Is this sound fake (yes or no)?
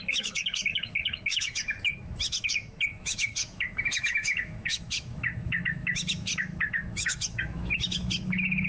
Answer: yes